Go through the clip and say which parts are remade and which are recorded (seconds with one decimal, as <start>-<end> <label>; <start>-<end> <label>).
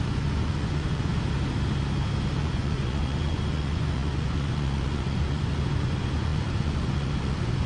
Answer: 0.0-1.1 remade; 1.1-2.4 recorded; 2.4-7.7 remade